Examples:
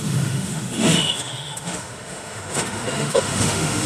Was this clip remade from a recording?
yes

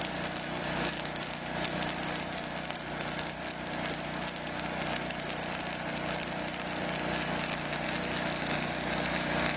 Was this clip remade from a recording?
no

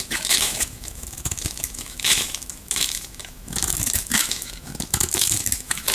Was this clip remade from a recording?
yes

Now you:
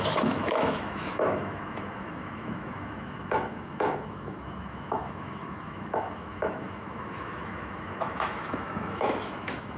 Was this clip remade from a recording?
yes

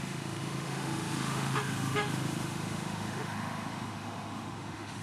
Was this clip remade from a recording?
yes